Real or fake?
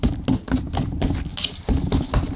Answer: real